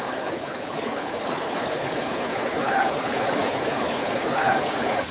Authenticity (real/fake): fake